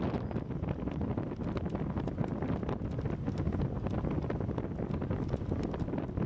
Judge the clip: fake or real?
real